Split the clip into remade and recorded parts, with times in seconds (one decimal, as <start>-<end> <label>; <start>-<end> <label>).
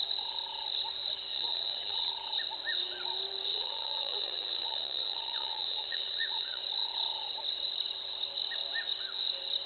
0.0-1.3 recorded; 1.3-2.1 remade; 2.1-3.5 recorded; 3.5-6.6 remade; 6.6-9.7 recorded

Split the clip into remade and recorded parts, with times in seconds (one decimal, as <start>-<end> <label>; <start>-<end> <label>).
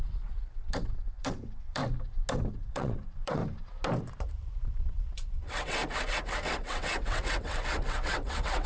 0.0-1.8 remade; 1.8-2.5 recorded; 2.5-3.4 remade; 3.4-4.3 recorded; 4.3-5.8 remade; 5.8-6.5 recorded; 6.5-8.7 remade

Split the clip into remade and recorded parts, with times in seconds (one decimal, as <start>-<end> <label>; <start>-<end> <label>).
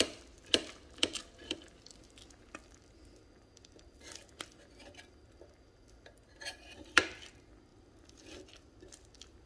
0.0-9.5 recorded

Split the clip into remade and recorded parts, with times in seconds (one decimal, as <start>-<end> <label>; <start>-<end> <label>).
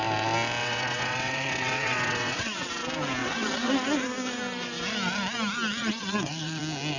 0.0-0.6 recorded; 0.6-2.7 remade; 2.7-3.2 recorded; 3.2-3.7 remade; 3.7-5.8 recorded; 5.8-6.6 remade; 6.6-7.0 recorded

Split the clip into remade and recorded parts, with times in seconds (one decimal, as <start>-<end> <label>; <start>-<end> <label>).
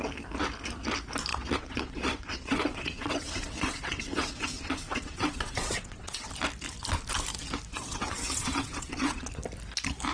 0.0-1.3 recorded; 1.3-6.3 remade; 6.3-7.7 recorded; 7.7-9.3 remade; 9.3-10.1 recorded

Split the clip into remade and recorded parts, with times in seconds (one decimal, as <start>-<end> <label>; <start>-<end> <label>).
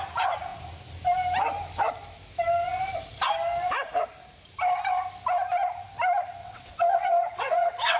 0.0-6.4 recorded; 6.4-8.0 remade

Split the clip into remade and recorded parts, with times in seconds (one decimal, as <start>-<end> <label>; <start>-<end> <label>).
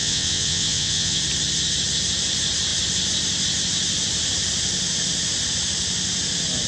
0.0-1.2 remade; 1.2-6.7 recorded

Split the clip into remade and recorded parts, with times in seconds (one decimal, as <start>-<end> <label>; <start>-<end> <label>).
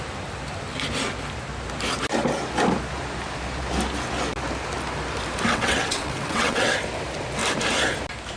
0.0-5.5 recorded; 5.5-6.7 remade; 6.7-8.4 recorded